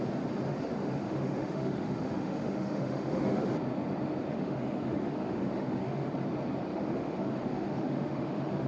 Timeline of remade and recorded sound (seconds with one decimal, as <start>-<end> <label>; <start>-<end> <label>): 0.0-0.5 recorded; 0.5-3.5 remade; 3.5-4.3 recorded; 4.3-6.1 remade; 6.1-6.7 recorded; 6.7-8.7 remade